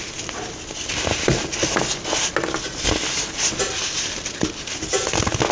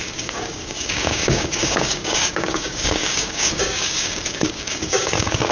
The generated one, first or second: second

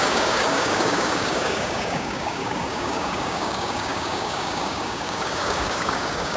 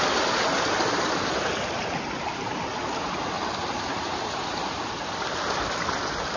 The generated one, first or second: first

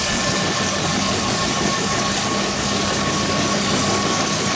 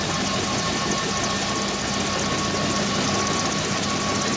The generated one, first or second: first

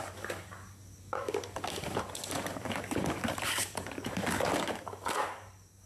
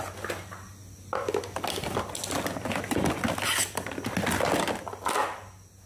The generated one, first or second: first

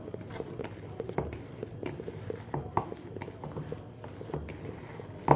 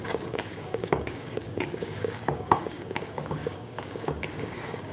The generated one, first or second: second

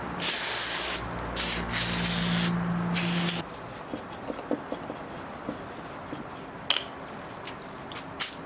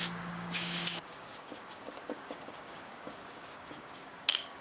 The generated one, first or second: second